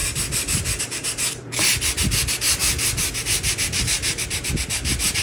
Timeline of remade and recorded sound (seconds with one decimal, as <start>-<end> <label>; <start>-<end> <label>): 0.0-0.8 remade; 0.8-5.2 recorded